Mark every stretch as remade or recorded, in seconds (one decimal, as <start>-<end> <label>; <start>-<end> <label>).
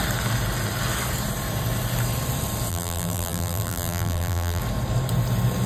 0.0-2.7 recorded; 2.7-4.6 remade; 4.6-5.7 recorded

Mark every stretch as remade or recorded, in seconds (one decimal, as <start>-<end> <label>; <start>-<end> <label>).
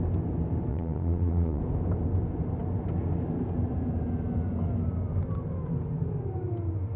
0.0-0.7 recorded; 0.7-1.6 remade; 1.6-7.0 recorded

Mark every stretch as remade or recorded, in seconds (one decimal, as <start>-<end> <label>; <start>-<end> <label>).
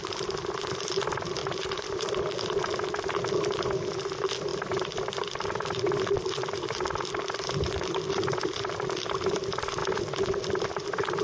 0.0-1.4 recorded; 1.4-2.6 remade; 2.6-4.5 recorded; 4.5-7.1 remade; 7.1-11.2 recorded